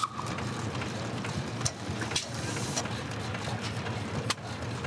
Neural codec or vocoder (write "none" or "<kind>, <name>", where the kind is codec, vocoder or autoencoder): none